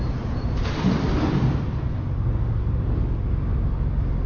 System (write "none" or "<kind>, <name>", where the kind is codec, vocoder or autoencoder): none